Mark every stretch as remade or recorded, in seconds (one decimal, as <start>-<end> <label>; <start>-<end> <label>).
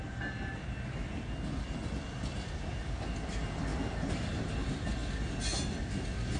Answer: 0.0-6.4 recorded